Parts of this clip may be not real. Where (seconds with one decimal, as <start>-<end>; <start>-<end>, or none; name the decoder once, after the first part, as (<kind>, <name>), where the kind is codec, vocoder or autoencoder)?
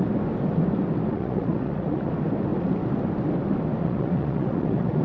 1.1-2.1 (vocoder, Vocos); 3.8-5.0